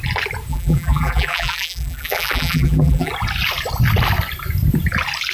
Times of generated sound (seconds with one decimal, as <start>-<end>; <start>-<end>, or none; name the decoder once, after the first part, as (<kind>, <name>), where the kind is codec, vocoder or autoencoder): 0.5-3.1 (vocoder, BigVGAN v2)